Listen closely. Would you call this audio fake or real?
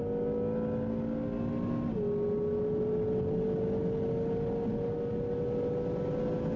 real